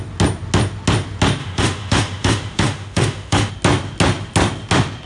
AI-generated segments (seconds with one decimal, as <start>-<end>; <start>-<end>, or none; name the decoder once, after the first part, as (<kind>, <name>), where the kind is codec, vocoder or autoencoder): 1.4-3.5 (autoencoder, DAC-VAE)